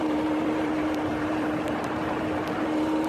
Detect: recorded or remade remade